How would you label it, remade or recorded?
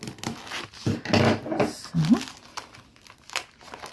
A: recorded